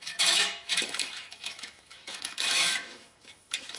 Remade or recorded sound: remade